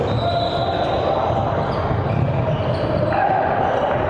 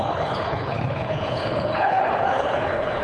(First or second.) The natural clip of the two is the first